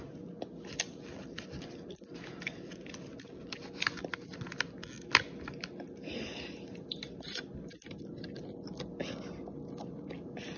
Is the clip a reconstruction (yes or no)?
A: no